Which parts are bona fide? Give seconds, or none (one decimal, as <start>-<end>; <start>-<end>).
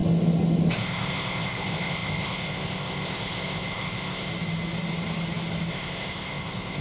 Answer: 0.0-0.7; 4.3-5.7